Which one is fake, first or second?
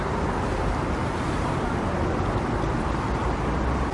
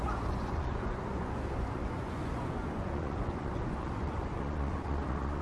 second